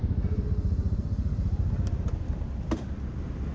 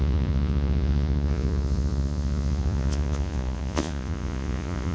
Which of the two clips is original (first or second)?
first